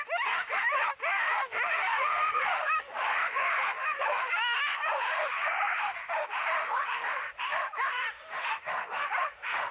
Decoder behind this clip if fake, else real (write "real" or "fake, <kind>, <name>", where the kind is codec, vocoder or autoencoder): fake, autoencoder, DAC-VAE